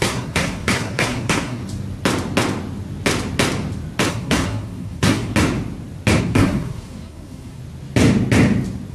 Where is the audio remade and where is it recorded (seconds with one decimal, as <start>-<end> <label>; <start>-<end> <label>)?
0.0-1.6 remade; 1.6-4.1 recorded; 4.1-5.3 remade; 5.3-6.2 recorded; 6.2-7.6 remade; 7.6-8.9 recorded